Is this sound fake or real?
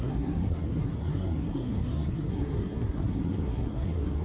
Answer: fake